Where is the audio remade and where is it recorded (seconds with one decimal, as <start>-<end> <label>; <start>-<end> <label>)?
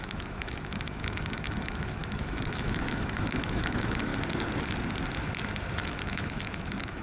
0.0-4.1 remade; 4.1-5.8 recorded; 5.8-7.0 remade